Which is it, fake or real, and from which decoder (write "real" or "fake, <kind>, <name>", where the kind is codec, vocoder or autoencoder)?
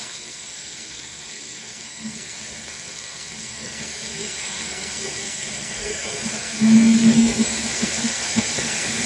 fake, codec, SNAC